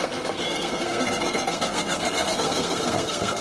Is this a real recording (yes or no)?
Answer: no